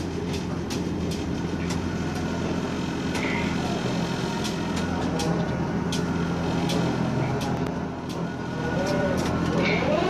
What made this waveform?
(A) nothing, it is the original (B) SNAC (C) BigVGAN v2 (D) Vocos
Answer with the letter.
A